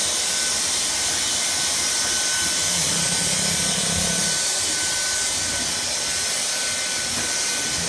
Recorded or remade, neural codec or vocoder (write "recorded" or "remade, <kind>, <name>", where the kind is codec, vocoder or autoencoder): recorded